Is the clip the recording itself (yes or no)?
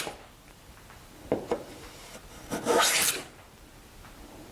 no